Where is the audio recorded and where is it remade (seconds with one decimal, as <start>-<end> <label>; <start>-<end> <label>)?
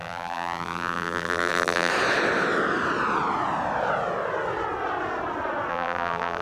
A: 0.0-1.9 remade; 1.9-5.7 recorded; 5.7-6.4 remade